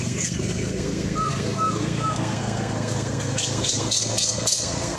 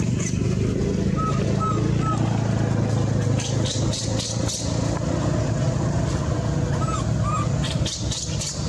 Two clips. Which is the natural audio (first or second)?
second